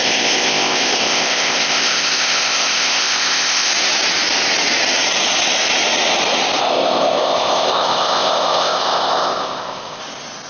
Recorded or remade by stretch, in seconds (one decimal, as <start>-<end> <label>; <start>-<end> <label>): 0.0-3.7 remade; 3.7-6.6 recorded; 6.6-10.0 remade; 10.0-10.5 recorded